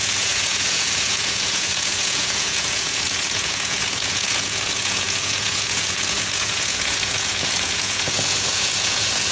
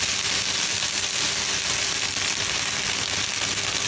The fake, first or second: first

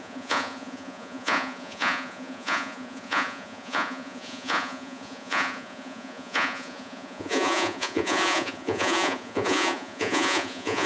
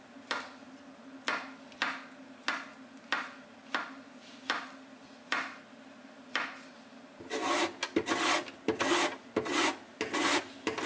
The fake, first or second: first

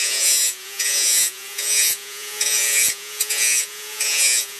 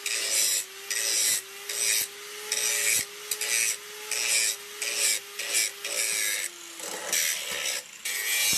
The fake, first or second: first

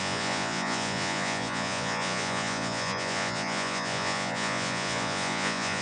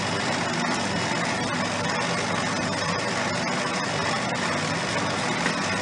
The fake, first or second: first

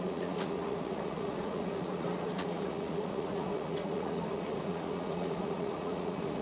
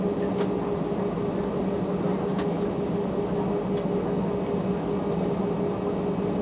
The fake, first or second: first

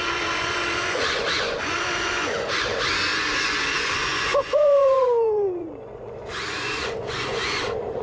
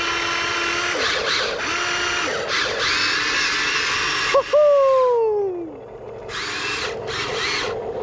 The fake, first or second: first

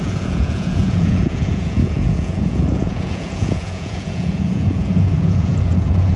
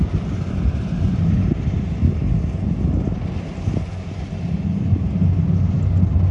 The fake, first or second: first